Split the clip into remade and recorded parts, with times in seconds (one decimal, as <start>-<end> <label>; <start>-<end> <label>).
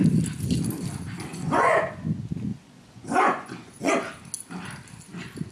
0.0-1.3 recorded; 1.3-2.1 remade; 2.1-2.5 recorded; 2.5-3.9 remade; 3.9-5.5 recorded